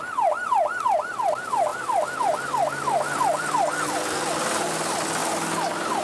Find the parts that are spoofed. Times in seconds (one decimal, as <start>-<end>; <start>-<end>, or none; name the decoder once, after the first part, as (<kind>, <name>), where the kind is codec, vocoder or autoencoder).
none

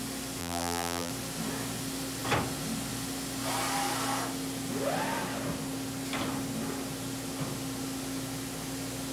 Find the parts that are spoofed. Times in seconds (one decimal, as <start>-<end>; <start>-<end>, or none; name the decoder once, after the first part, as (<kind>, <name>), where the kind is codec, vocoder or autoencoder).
0.4-1.1 (vocoder, BigVGAN v2)

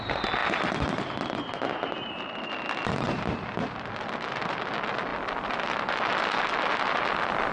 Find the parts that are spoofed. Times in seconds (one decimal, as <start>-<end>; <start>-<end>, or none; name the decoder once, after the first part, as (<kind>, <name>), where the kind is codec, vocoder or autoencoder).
none

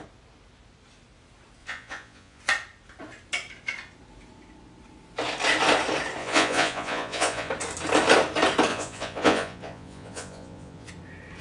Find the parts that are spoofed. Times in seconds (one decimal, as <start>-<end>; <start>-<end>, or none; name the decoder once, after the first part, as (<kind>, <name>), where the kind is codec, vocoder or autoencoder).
1.6-2.4 (vocoder, Vocos); 6.2-7.5; 8.7-10.9

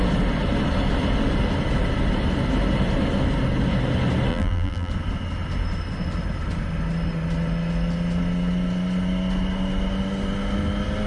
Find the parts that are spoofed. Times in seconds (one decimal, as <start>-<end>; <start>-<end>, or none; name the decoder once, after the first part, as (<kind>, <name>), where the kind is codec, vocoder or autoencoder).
4.3-4.9 (vocoder, BigVGAN v2)

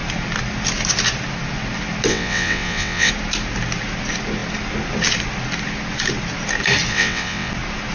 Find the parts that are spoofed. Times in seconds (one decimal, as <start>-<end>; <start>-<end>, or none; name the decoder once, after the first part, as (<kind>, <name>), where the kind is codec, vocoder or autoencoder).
2.1-3.1 (vocoder, WaveNeXt); 6.9-7.5

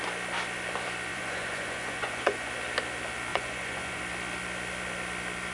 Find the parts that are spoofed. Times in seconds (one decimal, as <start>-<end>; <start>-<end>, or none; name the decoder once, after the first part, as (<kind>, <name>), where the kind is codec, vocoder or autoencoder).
1.1-2.5 (vocoder, Vocos); 3.3-4.0